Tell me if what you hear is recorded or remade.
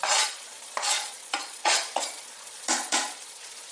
remade